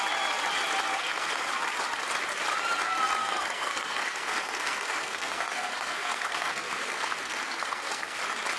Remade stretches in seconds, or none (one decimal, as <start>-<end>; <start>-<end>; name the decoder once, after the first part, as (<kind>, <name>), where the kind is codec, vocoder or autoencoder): 0.9-1.5 (codec, SNAC); 3.2-8.2